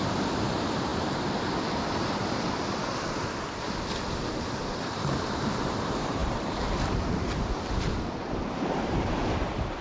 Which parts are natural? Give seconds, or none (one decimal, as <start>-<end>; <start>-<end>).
2.8-4.7